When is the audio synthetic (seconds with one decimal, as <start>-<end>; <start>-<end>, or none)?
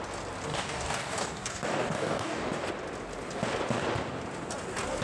0.5-2.7